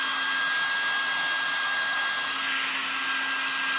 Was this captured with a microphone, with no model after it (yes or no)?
yes